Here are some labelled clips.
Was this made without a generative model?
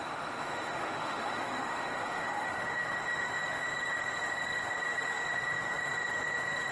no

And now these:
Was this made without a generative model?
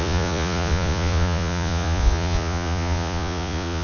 no